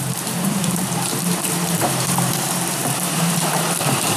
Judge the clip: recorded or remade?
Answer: remade